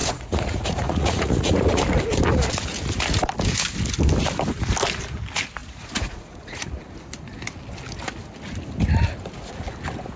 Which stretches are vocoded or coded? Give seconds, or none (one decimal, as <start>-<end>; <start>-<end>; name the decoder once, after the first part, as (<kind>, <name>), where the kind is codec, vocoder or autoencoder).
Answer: 0.0-1.8 (vocoder, Vocos); 5.6-6.8